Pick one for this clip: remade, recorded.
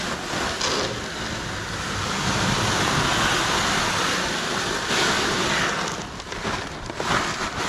recorded